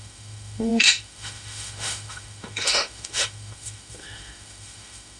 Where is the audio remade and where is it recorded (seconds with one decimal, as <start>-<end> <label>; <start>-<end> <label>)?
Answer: 0.0-5.2 remade